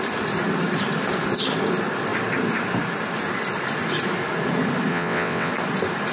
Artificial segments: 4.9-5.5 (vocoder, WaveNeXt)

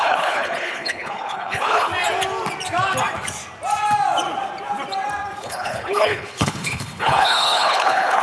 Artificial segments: 0.0-1.9 (codec, HILCodec); 5.4-8.2

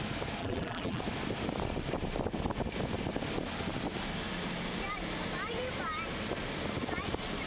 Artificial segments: 0.4-1.0 (vocoder, BigVGAN v2)

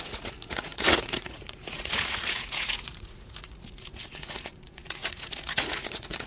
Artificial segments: 0.0-6.3 (vocoder, Vocos)

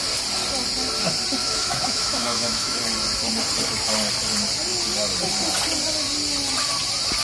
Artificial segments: 1.4-2.8 (autoencoder, DAC-VAE)

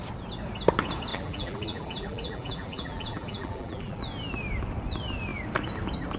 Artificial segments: 1.1-4.0 (vocoder, BigVGAN v2)